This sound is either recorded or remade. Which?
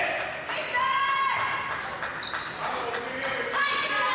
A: recorded